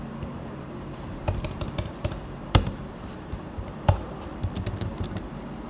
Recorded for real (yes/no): no